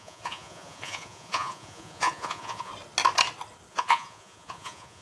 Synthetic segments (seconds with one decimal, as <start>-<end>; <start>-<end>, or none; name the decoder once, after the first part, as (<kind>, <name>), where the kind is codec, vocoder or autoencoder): 0.0-2.7 (vocoder, Vocos); 3.7-5.0